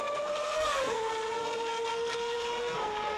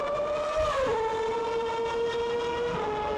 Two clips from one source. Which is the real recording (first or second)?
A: second